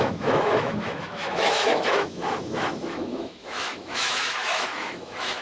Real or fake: fake